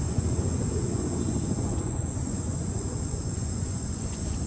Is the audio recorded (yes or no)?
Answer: no